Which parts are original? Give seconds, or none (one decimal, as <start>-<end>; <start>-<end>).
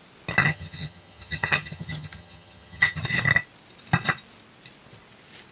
0.0-0.4; 3.0-5.5